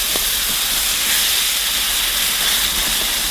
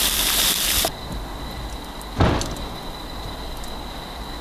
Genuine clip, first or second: first